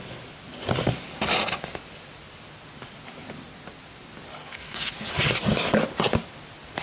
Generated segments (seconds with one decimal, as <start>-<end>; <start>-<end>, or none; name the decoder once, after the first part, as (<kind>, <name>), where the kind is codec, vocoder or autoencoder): 4.4-5.1 (codec, SNAC)

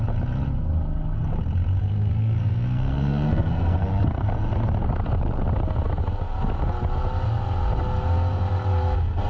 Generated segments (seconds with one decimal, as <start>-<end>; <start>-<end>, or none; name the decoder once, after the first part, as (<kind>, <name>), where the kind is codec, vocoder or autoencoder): 1.8-4.3 (codec, SNAC)